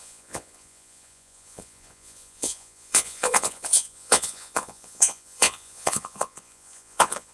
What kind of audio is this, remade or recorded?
remade